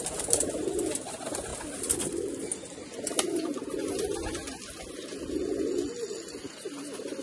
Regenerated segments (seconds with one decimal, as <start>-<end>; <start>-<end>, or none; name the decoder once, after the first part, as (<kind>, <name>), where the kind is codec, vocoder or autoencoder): none